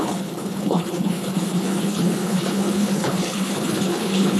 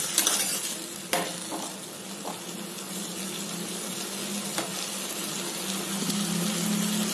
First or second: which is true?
second